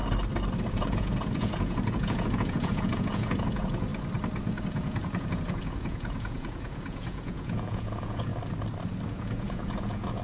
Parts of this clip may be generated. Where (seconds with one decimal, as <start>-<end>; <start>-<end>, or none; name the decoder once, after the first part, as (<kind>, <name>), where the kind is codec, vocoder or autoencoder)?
0.7-3.9 (vocoder, Vocos); 4.6-8.3; 9.1-10.2